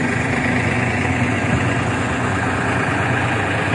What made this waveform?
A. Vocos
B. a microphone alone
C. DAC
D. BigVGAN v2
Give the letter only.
A